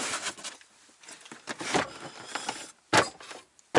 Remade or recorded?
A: recorded